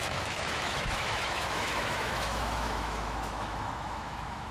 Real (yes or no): no